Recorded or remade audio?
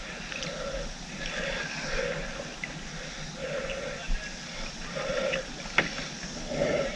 recorded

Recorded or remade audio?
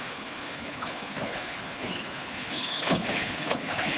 remade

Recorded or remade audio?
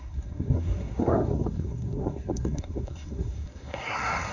remade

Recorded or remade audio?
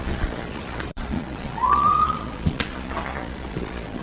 remade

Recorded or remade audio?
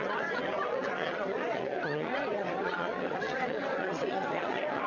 remade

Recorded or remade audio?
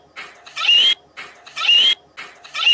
recorded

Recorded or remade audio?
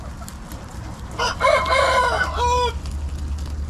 recorded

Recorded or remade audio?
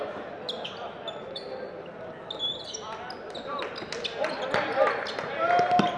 recorded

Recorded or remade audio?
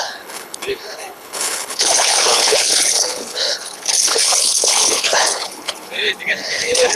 remade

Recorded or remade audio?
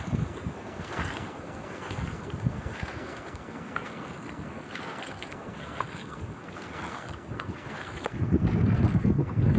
remade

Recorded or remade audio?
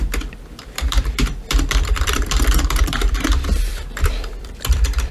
remade